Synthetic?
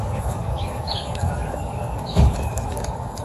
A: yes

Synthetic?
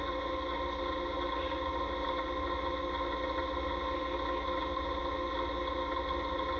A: no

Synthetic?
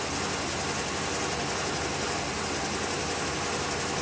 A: no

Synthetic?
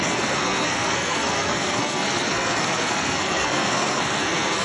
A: yes